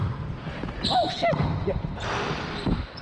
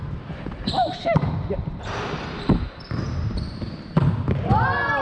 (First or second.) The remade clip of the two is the second